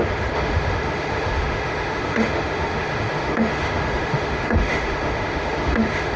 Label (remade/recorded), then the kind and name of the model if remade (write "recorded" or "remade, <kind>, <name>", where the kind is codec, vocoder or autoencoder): remade, autoencoder, DAC-VAE